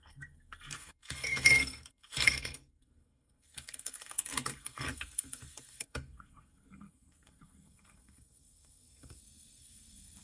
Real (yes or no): no